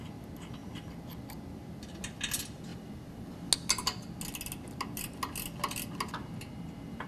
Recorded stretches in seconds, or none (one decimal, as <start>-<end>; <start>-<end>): 0.0-7.1